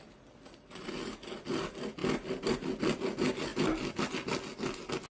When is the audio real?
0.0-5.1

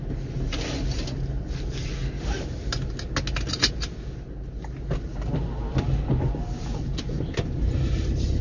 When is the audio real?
0.0-8.4

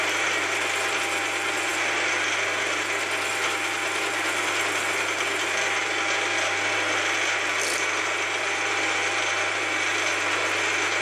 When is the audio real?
0.0-11.0

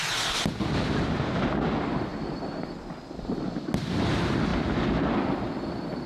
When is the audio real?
0.0-6.1

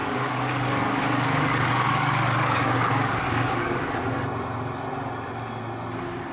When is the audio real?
3.8-6.3

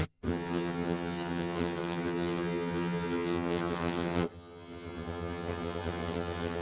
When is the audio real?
none